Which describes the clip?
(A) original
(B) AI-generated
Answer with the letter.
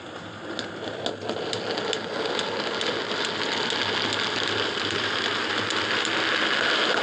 A